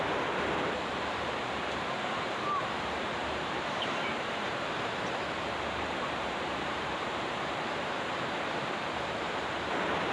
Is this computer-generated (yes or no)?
yes